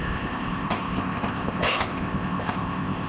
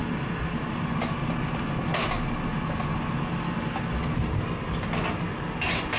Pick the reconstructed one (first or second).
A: first